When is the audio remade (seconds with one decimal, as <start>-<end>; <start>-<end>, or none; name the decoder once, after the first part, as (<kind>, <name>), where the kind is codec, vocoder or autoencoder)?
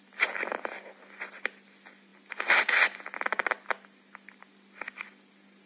none